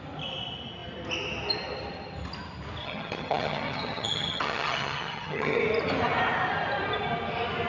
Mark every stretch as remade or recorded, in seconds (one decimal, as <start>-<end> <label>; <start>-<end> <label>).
0.0-2.8 recorded; 2.8-5.6 remade; 5.6-7.7 recorded